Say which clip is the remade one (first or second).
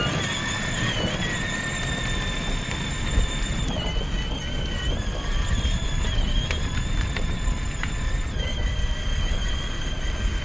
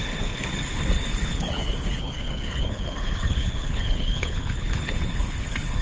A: second